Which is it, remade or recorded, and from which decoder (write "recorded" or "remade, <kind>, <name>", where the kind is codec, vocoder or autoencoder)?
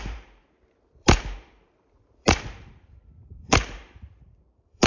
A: remade, vocoder, BigVGAN v2